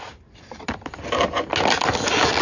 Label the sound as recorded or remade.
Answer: recorded